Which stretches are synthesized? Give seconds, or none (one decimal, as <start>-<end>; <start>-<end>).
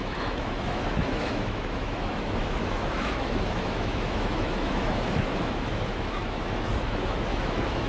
0.0-7.9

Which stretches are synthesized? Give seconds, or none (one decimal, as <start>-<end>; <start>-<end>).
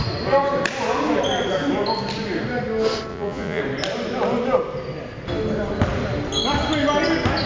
3.1-3.6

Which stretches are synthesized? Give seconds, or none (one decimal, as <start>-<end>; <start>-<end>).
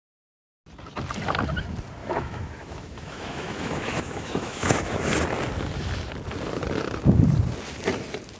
2.0-5.0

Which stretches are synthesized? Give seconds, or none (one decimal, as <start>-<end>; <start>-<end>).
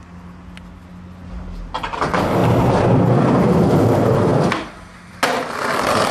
none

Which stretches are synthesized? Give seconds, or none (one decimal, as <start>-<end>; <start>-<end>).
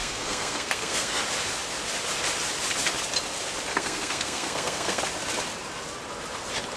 0.0-1.2; 3.7-5.0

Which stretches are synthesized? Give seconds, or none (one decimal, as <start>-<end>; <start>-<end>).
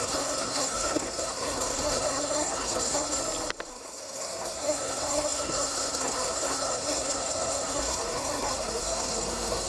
0.0-3.2; 3.7-9.7